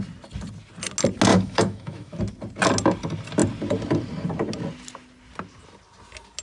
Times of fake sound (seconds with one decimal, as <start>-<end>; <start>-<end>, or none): 1.3-2.2